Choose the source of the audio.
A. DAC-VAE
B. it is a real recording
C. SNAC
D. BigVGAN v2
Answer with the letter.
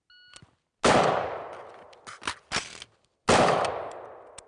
B